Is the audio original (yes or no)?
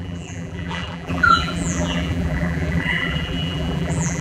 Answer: no